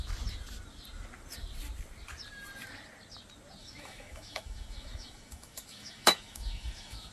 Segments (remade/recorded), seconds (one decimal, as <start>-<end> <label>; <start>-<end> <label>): 0.0-3.6 recorded; 3.6-7.1 remade